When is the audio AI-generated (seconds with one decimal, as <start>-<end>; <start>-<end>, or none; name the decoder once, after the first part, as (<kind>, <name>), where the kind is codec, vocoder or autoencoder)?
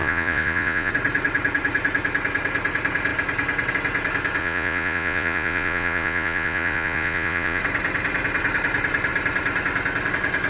0.0-0.9 (vocoder, Vocos); 4.4-7.6